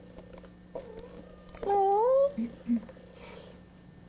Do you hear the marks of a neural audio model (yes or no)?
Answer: no